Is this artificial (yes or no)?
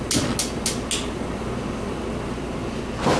no